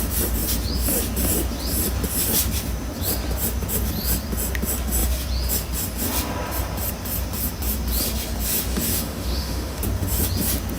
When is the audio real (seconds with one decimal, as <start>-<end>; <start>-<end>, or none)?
0.0-8.9; 9.8-10.8